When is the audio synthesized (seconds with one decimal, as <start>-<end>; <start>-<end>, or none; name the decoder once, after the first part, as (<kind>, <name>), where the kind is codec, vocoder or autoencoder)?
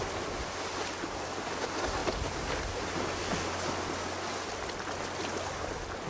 none